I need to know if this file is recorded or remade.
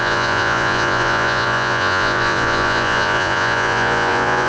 remade